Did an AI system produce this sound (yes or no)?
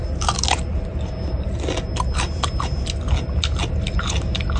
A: no